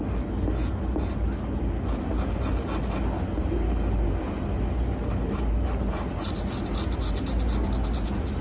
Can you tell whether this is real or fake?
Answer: real